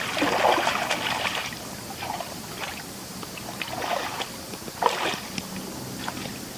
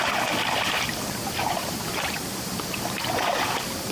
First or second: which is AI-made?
second